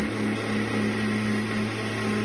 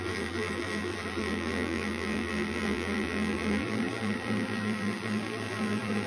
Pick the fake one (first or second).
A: second